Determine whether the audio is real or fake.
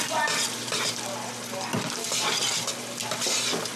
fake